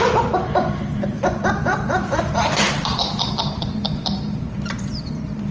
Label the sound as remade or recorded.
remade